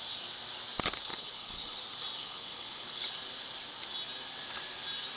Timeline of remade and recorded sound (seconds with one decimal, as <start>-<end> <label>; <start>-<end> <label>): 0.0-1.1 recorded; 1.1-1.8 remade; 1.8-2.2 recorded; 2.2-3.1 remade; 3.1-5.2 recorded